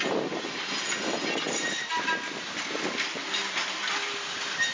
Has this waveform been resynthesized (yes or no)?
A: no